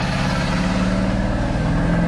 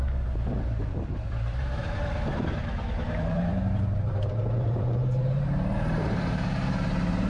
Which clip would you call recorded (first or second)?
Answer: first